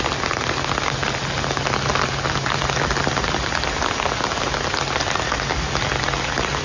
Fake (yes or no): no